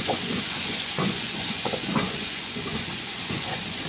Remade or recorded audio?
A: remade